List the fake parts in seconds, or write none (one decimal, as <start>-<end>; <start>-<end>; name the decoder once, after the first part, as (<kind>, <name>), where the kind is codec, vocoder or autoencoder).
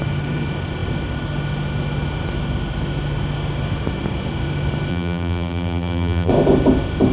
4.9-6.3 (vocoder, BigVGAN v2)